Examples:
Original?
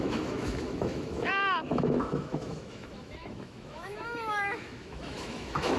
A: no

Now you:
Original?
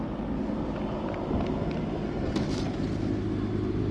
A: yes